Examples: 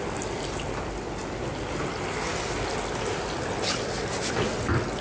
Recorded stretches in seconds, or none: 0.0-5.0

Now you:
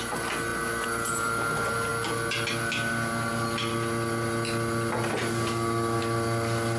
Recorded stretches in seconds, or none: 0.0-6.8

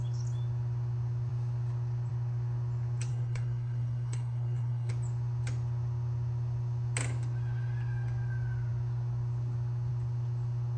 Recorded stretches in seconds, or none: 0.0-3.1; 4.9-10.8

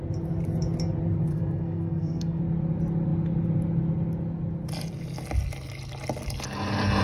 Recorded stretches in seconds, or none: 0.0-1.3; 2.4-7.0

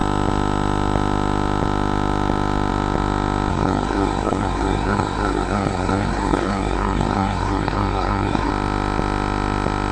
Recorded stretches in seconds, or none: 0.0-3.5; 8.5-9.9